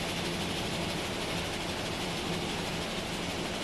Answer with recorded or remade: recorded